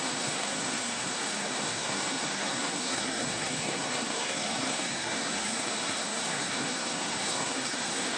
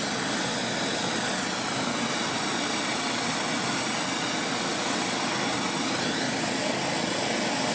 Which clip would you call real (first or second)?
second